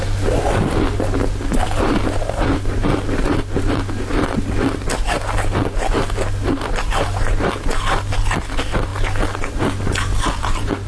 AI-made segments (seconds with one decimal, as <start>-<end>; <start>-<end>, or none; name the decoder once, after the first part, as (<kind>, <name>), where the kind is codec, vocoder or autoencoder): none